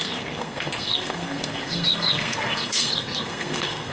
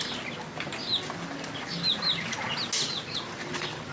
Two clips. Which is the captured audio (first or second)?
second